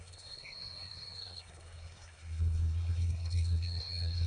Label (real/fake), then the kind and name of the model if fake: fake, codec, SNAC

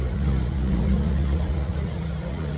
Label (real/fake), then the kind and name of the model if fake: fake, vocoder, Vocos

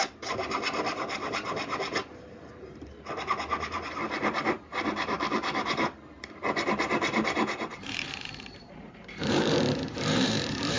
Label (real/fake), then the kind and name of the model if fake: fake, vocoder, BigVGAN v2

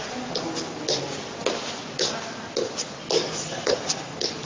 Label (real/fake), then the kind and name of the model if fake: real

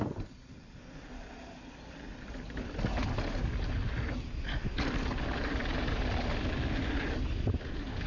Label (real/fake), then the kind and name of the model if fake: real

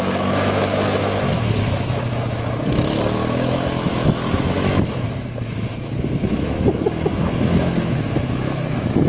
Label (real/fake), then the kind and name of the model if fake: fake, autoencoder, DAC-VAE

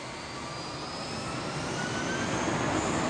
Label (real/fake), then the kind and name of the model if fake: real